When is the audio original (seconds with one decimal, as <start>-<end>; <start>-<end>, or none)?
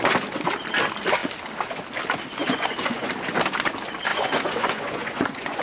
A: 0.0-2.4; 3.1-4.1